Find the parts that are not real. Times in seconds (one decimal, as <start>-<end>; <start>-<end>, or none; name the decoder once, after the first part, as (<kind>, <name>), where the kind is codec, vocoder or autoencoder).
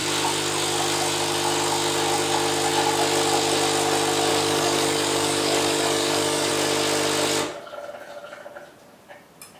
4.3-6.5 (codec, DAC)